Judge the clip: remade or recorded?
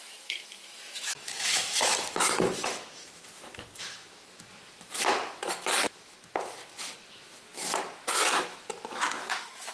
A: remade